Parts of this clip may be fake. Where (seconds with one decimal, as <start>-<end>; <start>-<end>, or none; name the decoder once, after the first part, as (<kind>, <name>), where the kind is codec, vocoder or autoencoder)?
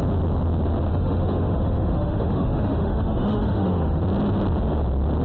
0.9-4.0 (autoencoder, DAC-VAE)